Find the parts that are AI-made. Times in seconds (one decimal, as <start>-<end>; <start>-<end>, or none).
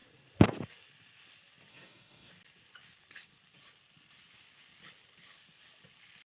1.7-2.3